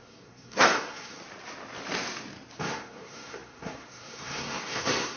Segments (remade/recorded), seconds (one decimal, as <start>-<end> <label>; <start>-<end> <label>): 0.0-1.2 remade; 1.2-2.6 recorded; 2.6-5.2 remade